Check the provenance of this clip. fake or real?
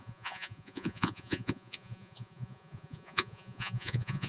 fake